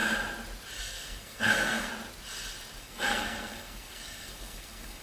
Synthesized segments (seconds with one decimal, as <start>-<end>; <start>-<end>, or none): 0.8-1.9; 2.8-5.0